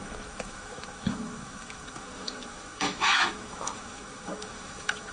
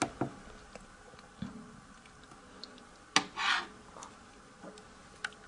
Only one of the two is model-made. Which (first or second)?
first